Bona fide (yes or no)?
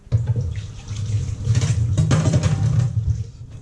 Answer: yes